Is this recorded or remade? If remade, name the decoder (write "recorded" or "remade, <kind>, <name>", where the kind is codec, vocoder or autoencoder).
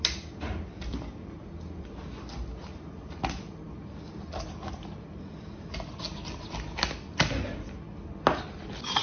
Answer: recorded